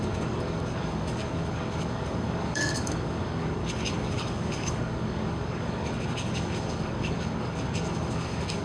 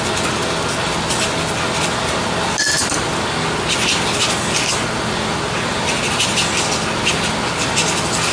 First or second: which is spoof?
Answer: first